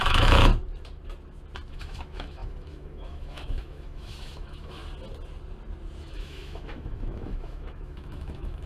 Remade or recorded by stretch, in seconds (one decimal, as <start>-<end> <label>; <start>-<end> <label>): 0.0-0.5 remade; 0.5-1.7 recorded; 1.7-4.8 remade; 4.8-6.0 recorded; 6.0-8.7 remade